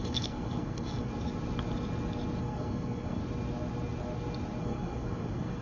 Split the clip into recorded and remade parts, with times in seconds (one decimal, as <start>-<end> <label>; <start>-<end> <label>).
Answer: 0.0-1.1 remade; 1.1-2.4 recorded; 2.4-3.2 remade; 3.2-4.6 recorded; 4.6-5.6 remade